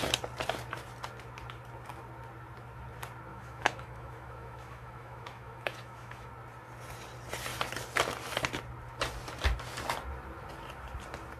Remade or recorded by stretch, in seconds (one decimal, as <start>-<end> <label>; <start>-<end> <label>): 0.0-3.3 recorded; 3.3-6.3 remade; 6.3-11.4 recorded